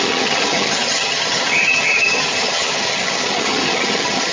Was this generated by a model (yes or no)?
yes